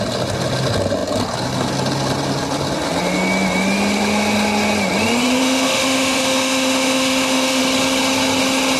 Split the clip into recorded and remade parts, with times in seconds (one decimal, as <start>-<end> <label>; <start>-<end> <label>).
0.0-5.4 recorded; 5.4-7.6 remade; 7.6-8.8 recorded